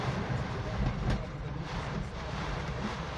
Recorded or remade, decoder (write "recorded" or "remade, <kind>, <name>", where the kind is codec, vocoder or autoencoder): remade, vocoder, BigVGAN v2